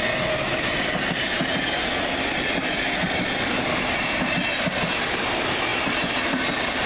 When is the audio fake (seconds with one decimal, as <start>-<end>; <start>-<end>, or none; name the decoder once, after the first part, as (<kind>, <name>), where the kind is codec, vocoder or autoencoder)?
none